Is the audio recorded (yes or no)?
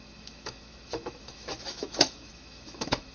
no